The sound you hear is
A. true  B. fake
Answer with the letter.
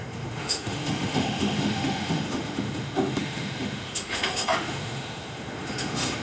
B